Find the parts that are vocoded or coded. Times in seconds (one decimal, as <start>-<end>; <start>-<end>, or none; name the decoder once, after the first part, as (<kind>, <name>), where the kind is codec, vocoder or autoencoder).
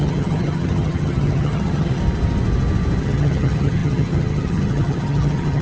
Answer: 0.0-2.0 (vocoder, HiFi-GAN); 3.0-5.6